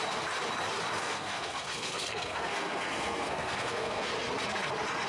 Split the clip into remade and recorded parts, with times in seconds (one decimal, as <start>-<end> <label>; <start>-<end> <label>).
0.0-1.0 recorded; 1.0-4.1 remade; 4.1-5.1 recorded